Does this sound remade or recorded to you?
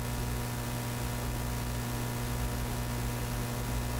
recorded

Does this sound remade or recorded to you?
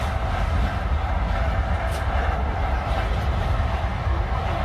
recorded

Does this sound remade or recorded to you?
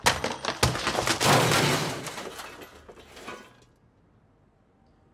recorded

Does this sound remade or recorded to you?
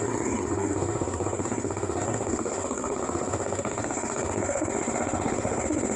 remade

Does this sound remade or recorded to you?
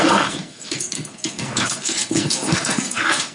remade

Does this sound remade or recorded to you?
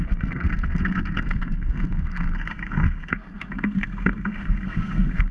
remade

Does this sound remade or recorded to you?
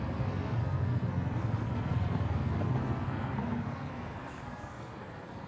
remade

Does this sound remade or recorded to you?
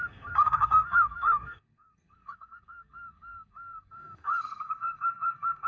remade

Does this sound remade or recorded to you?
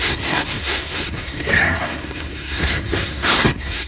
remade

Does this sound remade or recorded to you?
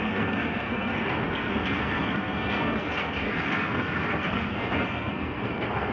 remade